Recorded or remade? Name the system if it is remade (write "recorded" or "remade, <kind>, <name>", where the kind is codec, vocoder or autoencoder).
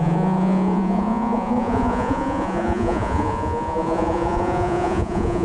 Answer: remade, vocoder, Vocos